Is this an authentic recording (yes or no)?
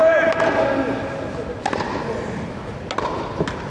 yes